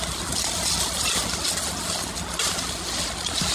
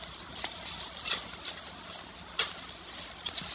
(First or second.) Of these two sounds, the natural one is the first